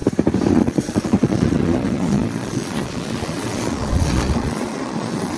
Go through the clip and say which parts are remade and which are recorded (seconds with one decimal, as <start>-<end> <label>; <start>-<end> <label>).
0.0-0.5 recorded; 0.5-5.4 remade